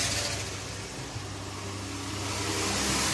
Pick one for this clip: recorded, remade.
recorded